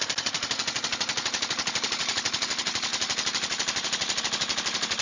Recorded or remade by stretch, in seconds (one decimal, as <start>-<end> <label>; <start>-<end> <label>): 0.0-5.0 recorded